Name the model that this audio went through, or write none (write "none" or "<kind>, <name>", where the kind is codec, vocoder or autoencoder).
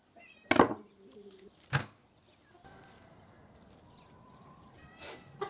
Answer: none